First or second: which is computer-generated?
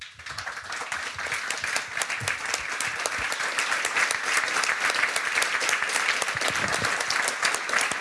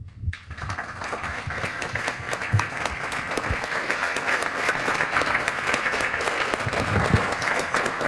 second